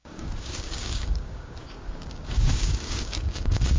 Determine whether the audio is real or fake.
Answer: fake